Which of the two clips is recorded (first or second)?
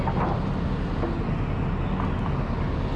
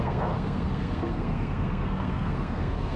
first